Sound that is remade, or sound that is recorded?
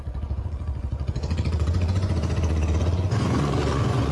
remade